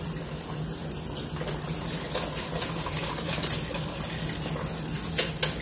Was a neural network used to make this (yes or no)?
no